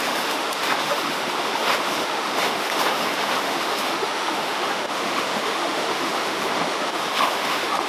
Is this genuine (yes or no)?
no